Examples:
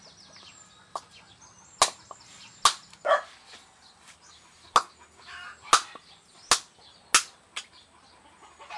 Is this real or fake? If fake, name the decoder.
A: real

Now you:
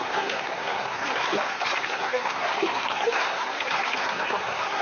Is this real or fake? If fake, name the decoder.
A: fake, codec, SNAC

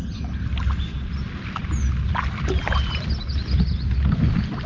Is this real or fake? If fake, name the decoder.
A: real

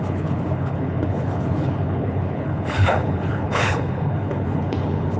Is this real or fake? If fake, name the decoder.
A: fake, codec, HILCodec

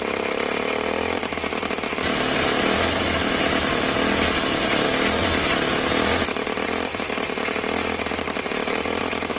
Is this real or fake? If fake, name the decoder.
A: fake, vocoder, BigVGAN v2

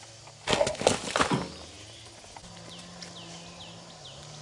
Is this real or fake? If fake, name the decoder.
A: real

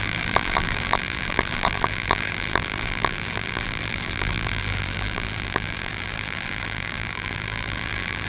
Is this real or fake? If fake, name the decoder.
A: fake, vocoder, BigVGAN v2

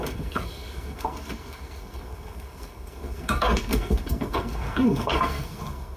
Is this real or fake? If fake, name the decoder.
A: fake, codec, SNAC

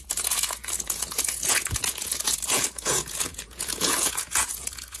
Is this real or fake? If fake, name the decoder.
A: fake, vocoder, Vocos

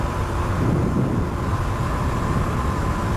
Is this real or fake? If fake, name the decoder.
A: real